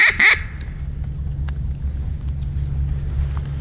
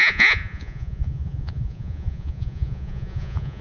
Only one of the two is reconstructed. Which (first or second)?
second